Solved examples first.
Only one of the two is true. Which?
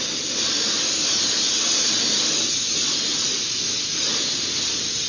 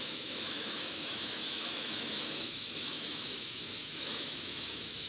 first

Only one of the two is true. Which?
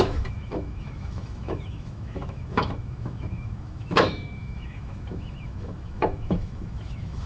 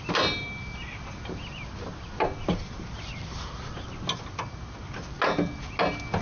second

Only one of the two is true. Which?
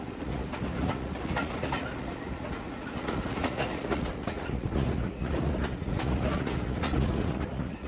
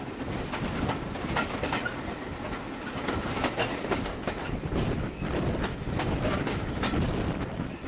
second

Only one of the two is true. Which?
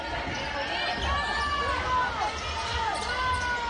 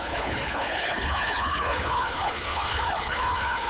first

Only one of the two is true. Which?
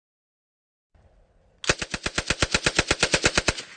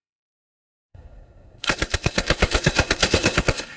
first